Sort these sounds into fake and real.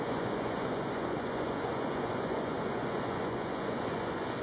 fake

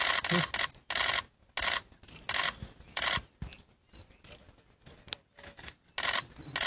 real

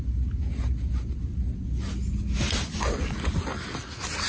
real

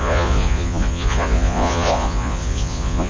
fake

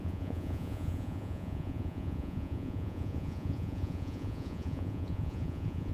fake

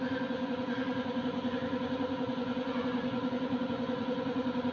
fake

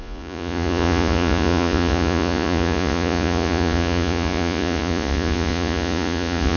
fake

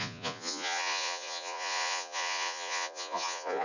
fake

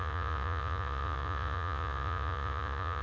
fake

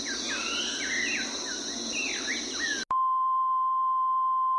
real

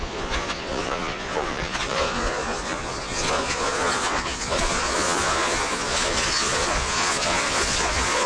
fake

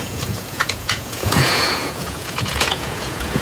fake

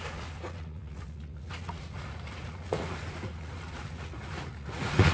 fake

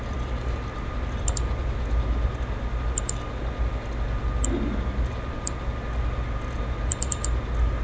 real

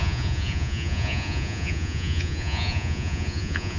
fake